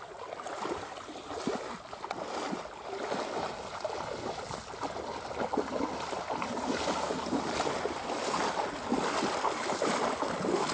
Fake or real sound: real